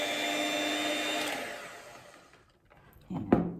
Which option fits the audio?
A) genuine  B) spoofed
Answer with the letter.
A